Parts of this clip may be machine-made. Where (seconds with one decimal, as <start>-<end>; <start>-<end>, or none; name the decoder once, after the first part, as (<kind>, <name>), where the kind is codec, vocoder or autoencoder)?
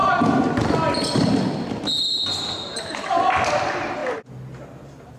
none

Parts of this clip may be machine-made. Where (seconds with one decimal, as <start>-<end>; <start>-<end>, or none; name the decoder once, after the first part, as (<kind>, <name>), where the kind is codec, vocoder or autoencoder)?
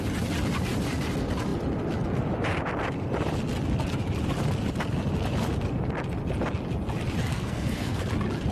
7.3-8.0 (codec, SNAC)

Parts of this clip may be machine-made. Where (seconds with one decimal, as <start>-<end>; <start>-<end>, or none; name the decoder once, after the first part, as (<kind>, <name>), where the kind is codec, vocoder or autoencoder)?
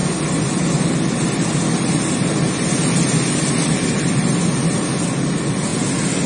none